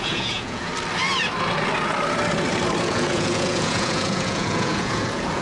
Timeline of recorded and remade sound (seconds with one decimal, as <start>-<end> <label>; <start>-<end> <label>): 0.0-0.7 remade; 0.7-2.8 recorded; 2.8-5.4 remade